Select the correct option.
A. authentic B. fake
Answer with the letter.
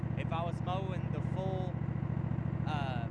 A